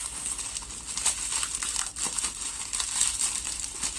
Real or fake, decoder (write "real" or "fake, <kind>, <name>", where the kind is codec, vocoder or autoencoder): real